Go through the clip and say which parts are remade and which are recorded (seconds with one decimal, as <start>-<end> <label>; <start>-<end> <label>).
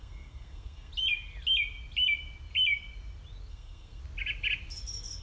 0.0-0.9 remade; 0.9-3.5 recorded; 3.5-4.0 remade; 4.0-5.2 recorded